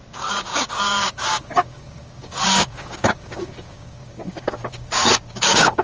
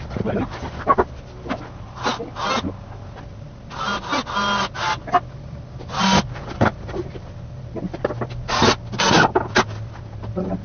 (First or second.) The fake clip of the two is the first